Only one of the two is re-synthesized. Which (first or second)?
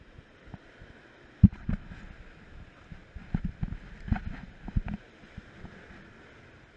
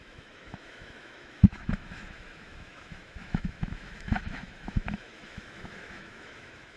second